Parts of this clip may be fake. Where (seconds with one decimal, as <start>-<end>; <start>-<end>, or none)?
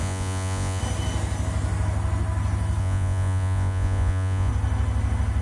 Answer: 0.0-0.8; 2.8-4.5